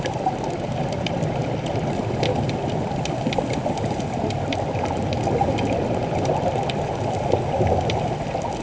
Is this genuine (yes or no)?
yes